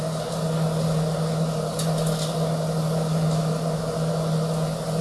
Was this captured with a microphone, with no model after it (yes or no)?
yes